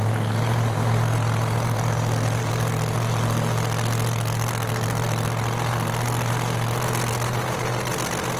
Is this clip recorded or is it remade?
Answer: recorded